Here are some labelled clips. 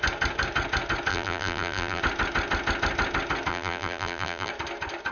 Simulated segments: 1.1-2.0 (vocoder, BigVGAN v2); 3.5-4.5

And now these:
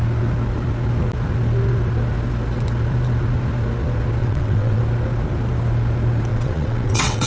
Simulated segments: 4.2-4.8 (vocoder, WaveNeXt); 6.3-7.3

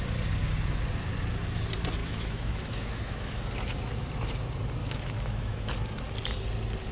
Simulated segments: 2.0-3.4 (autoencoder, DAC-VAE); 4.8-5.7

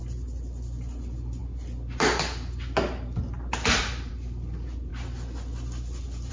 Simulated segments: none

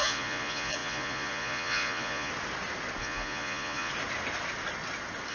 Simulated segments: 0.0-2.3 (vocoder, Vocos); 3.0-3.9

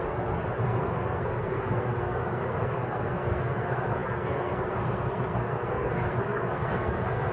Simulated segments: 0.0-7.3 (codec, SNAC)

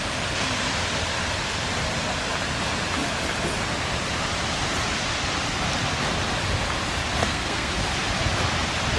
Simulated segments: 7.2-7.7 (codec, SNAC)